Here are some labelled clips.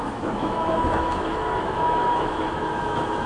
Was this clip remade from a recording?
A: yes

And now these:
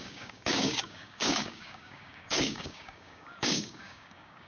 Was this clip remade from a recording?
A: yes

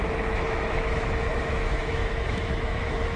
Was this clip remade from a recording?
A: yes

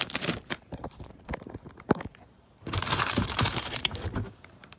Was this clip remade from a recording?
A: yes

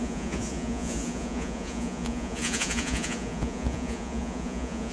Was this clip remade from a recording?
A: yes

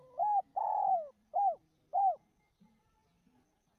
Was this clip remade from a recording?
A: no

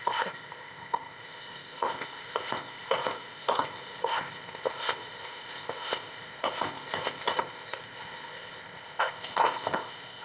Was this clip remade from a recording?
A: yes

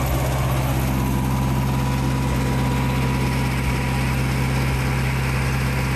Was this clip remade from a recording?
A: no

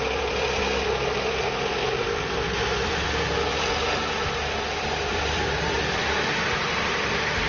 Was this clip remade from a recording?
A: yes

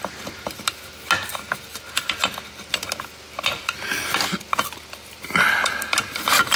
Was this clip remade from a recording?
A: no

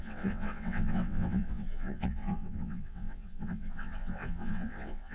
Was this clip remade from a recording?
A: yes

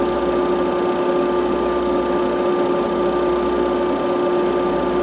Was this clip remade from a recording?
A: no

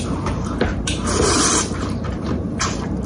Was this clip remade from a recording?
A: yes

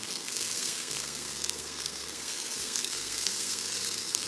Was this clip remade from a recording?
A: yes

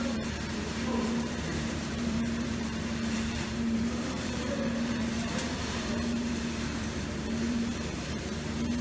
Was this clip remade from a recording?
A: yes